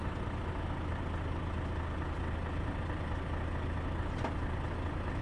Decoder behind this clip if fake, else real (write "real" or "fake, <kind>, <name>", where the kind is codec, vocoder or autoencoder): real